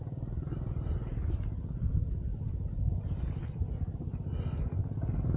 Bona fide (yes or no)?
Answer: yes